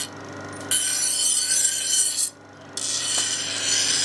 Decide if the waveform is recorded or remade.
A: recorded